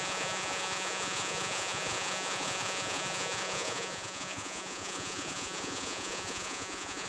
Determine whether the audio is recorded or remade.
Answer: remade